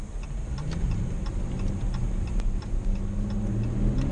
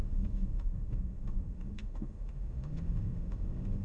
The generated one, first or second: second